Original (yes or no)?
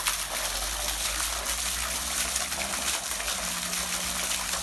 yes